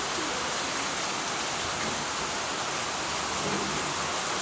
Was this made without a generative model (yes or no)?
yes